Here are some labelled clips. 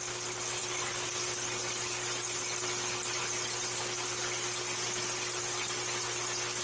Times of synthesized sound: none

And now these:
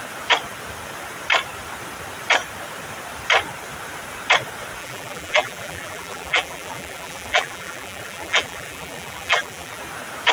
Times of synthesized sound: 4.8-9.8 (vocoder, BigVGAN v2)

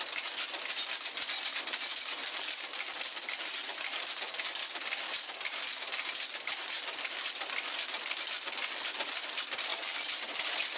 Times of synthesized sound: 1.9-4.4 (vocoder, BigVGAN v2); 9.7-10.2

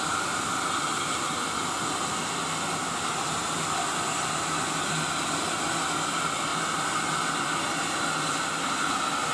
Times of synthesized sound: none

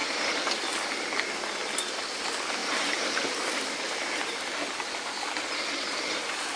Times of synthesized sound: 2.6-6.6 (vocoder, BigVGAN v2)

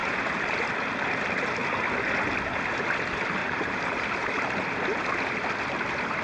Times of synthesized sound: 0.0-0.7 (vocoder, BigVGAN v2); 3.4-4.2

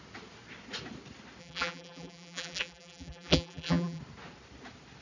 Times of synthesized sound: 1.4-4.0 (vocoder, BigVGAN v2)